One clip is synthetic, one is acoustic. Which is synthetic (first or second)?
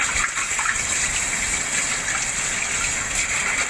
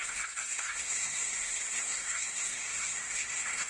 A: second